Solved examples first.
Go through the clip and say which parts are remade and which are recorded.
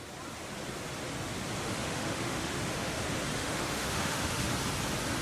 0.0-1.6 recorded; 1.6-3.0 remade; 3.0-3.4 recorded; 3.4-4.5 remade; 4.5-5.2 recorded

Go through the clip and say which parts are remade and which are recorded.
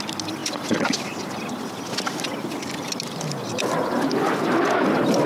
0.0-5.3 recorded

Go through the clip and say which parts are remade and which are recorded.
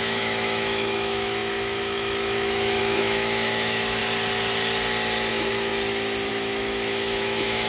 0.0-4.0 remade; 4.0-5.3 recorded; 5.3-5.7 remade; 5.7-6.3 recorded; 6.3-7.7 remade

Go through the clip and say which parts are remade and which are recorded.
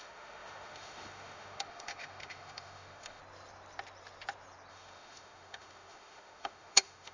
0.0-3.2 remade; 3.2-4.7 recorded; 4.7-7.1 remade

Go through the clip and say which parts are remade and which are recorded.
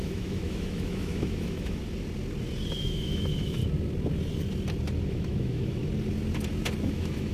0.0-1.8 remade; 1.8-2.8 recorded; 2.8-3.6 remade; 3.6-5.1 recorded; 5.1-5.8 remade; 5.8-6.8 recorded; 6.8-7.3 remade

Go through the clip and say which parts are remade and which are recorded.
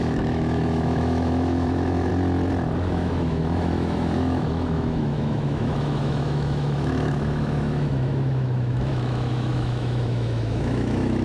0.0-2.1 remade; 2.1-2.9 recorded; 2.9-11.2 remade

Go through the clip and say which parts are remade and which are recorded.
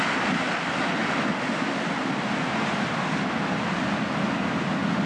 0.0-5.1 recorded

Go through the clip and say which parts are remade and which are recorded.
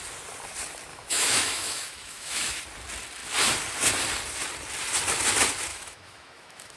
0.0-0.9 recorded; 0.9-2.6 remade; 2.6-5.7 recorded; 5.7-6.8 remade